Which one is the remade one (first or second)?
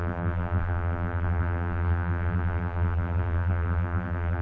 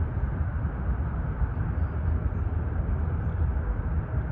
first